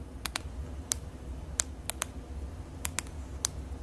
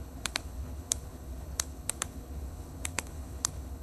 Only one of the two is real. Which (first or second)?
first